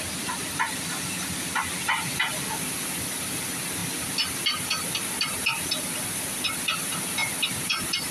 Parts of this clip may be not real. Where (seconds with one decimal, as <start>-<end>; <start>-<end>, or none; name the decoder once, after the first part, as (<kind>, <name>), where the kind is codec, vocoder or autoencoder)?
none